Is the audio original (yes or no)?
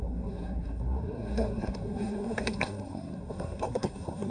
no